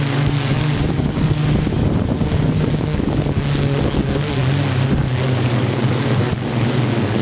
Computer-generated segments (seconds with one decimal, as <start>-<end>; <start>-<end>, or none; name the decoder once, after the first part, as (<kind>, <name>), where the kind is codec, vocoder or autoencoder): 0.0-1.4 (codec, DAC); 2.4-4.4; 5.0-7.2